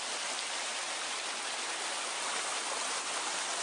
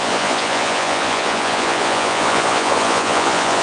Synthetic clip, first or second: second